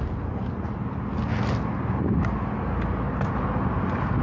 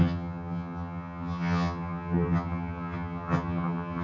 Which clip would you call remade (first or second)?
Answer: second